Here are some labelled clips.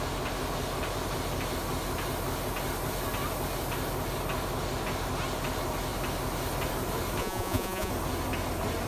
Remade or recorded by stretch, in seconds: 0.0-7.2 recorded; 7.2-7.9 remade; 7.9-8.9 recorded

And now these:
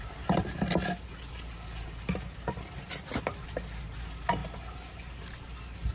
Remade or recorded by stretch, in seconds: 0.0-5.9 recorded

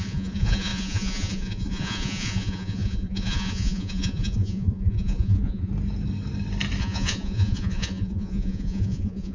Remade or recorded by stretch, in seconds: 0.0-5.7 remade; 5.7-6.8 recorded; 6.8-9.3 remade

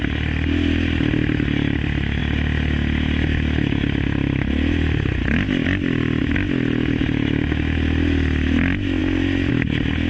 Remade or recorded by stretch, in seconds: 0.0-10.1 recorded